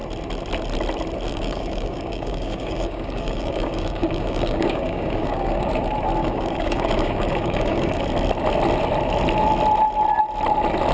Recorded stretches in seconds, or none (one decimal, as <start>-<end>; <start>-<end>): 0.0-1.3; 5.7-6.2; 8.0-10.9